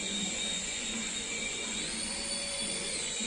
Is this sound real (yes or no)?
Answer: no